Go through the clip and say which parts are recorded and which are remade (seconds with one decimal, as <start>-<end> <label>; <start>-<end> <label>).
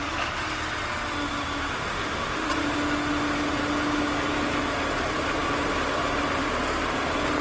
0.0-1.7 recorded; 1.7-2.5 remade; 2.5-7.4 recorded